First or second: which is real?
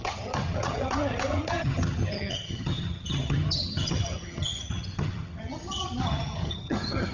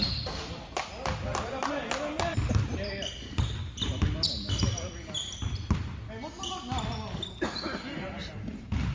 second